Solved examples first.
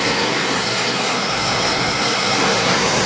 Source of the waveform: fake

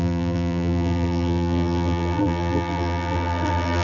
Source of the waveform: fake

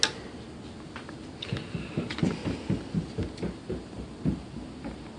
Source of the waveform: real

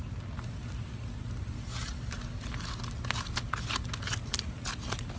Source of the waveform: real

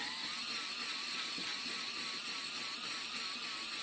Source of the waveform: fake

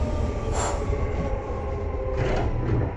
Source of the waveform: real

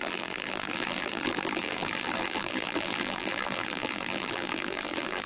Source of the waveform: fake